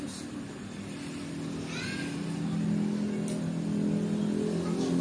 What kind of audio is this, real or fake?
real